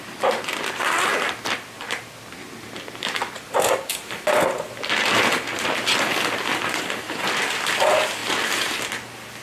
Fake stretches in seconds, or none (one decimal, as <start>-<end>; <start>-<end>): none